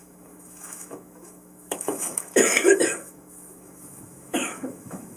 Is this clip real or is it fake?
fake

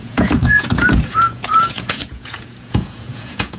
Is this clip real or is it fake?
fake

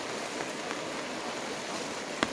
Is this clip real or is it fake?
real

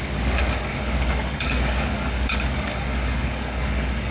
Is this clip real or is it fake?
fake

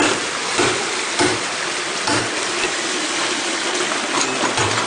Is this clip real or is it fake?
fake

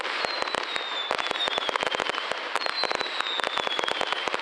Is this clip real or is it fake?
real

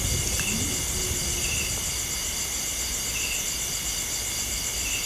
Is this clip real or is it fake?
real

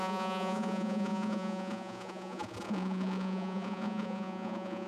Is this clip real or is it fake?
fake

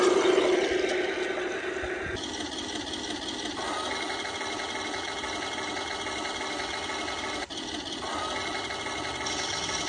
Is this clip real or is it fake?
real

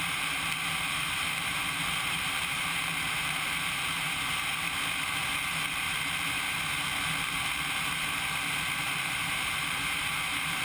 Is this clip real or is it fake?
fake